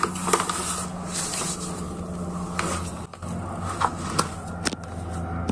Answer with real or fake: real